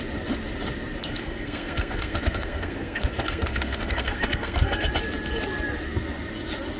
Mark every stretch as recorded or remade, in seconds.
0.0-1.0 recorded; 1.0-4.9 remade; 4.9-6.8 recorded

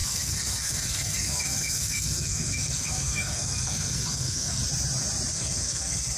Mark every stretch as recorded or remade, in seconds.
0.0-4.6 remade; 4.6-5.3 recorded; 5.3-6.2 remade

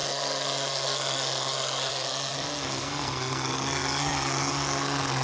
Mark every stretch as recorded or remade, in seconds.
0.0-5.2 remade

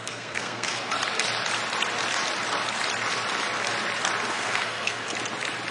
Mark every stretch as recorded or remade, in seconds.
0.0-0.9 remade; 0.9-4.3 recorded; 4.3-5.0 remade; 5.0-5.7 recorded

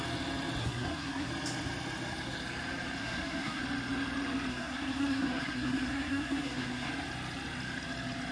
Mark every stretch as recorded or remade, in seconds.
0.0-0.6 recorded; 0.6-1.3 remade; 1.3-3.0 recorded; 3.0-3.6 remade; 3.6-4.5 recorded; 4.5-6.9 remade; 6.9-8.3 recorded

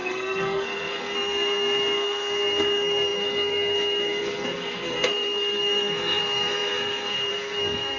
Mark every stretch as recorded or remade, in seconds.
0.0-8.0 remade

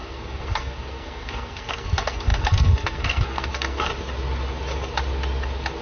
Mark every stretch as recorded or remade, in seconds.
0.0-3.9 remade; 3.9-5.8 recorded

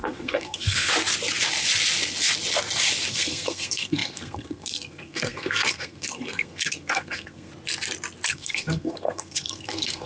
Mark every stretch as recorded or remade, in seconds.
0.0-0.9 remade; 0.9-3.1 recorded; 3.1-7.5 remade; 7.5-8.3 recorded; 8.3-10.1 remade